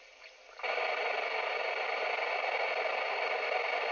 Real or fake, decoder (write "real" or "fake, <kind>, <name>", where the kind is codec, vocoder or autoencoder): real